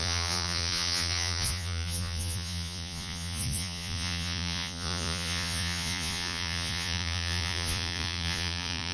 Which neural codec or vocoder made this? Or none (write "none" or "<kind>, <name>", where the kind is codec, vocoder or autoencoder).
vocoder, Vocos